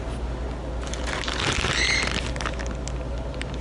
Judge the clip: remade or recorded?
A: recorded